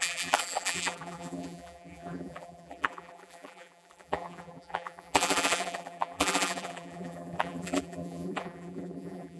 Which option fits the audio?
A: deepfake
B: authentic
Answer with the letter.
A